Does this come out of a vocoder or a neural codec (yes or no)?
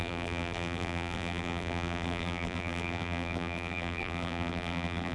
yes